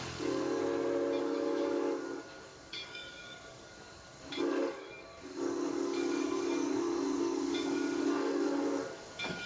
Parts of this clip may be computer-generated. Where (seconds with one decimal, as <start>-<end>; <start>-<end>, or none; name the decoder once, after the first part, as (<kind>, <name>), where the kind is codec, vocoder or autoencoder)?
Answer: 0.0-0.6 (codec, DAC); 1.2-9.5